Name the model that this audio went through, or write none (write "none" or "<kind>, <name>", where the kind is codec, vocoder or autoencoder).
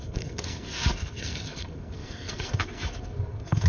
codec, SNAC